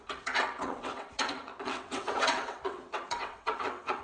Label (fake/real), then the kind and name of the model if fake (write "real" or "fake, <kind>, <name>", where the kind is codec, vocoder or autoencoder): fake, vocoder, WaveNeXt